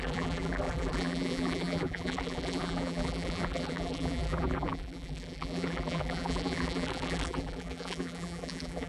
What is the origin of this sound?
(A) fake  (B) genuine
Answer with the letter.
A